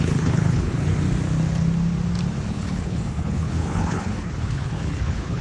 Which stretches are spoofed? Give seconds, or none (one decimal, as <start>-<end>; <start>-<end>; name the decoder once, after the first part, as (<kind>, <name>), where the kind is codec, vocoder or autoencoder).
0.0-0.9 (codec, HILCodec); 2.5-5.4